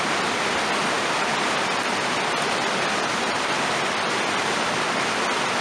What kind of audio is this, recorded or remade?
recorded